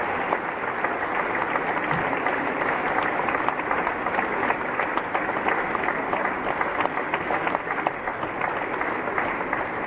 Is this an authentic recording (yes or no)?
yes